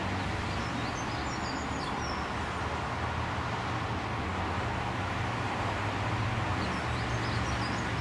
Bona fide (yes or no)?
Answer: yes